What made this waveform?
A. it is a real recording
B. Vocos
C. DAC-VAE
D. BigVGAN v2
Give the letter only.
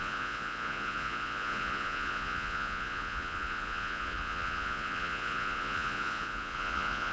B